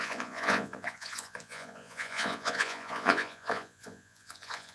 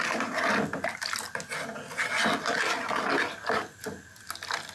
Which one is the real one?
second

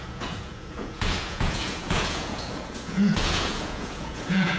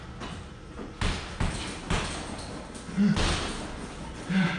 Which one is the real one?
second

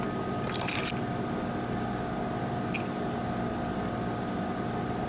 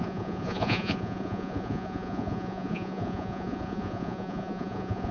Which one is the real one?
first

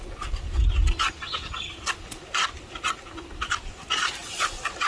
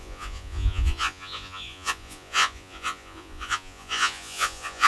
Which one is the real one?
first